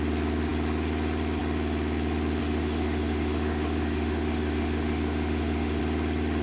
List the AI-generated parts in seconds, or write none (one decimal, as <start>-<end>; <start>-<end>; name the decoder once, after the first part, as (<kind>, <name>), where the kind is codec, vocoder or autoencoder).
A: 2.4-5.8 (autoencoder, DAC-VAE)